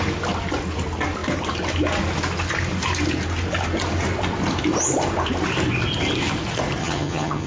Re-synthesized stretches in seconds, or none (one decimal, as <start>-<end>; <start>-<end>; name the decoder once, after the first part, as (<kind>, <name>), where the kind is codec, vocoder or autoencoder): 6.8-7.5 (vocoder, HiFi-GAN)